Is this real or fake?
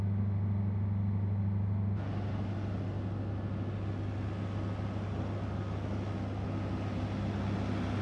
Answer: real